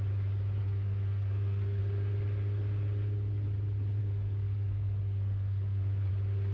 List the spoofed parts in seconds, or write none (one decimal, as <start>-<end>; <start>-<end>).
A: 0.6-1.8; 4.0-6.1